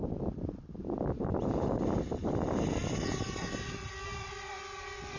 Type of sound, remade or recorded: recorded